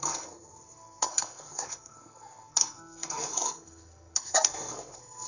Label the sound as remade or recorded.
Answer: remade